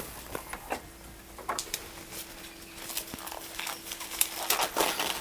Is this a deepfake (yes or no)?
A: no